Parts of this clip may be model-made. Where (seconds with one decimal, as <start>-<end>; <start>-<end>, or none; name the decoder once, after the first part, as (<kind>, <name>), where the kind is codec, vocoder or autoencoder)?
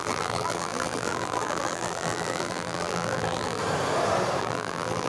0.0-3.6 (vocoder, BigVGAN v2); 4.4-5.1